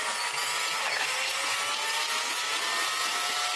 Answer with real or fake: real